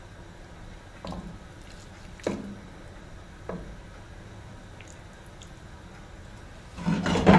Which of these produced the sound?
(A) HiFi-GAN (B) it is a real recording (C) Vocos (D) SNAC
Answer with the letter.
B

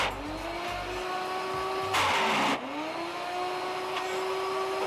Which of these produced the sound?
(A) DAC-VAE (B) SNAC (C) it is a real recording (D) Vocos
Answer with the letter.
C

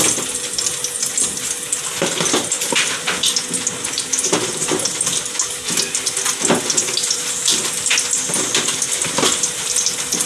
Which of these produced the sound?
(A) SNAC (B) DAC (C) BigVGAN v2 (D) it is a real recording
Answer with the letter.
D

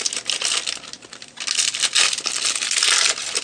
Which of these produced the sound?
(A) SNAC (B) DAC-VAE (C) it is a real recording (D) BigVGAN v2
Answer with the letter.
C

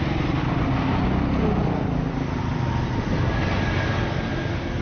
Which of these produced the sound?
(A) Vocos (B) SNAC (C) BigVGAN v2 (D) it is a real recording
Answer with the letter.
D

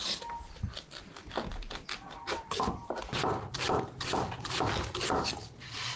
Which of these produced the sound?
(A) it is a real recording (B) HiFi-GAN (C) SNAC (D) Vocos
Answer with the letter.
A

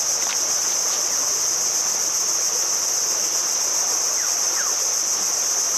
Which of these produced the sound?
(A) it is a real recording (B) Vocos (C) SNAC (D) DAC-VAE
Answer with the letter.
A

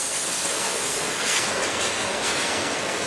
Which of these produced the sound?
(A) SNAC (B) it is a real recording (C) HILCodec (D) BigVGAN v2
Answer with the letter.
A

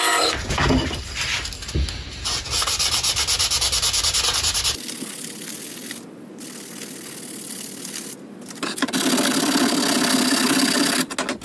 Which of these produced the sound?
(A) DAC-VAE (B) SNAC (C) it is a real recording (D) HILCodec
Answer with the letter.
C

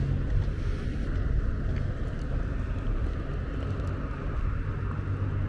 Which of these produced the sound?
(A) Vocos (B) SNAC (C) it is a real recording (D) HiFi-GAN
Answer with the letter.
C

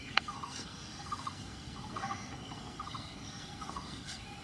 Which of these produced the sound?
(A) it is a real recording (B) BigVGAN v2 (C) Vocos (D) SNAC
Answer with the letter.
D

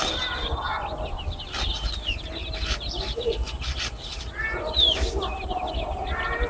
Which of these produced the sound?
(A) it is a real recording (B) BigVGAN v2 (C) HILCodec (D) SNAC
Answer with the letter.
A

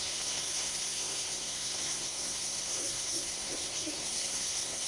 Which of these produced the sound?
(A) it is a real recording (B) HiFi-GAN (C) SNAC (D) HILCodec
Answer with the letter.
C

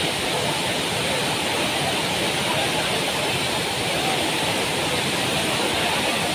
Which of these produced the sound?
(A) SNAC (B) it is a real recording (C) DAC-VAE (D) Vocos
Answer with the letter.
B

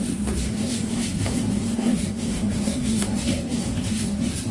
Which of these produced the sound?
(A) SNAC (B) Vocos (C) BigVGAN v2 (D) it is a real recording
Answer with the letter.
A